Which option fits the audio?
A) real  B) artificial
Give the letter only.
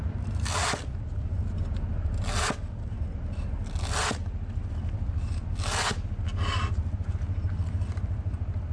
A